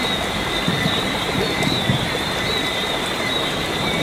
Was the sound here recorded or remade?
remade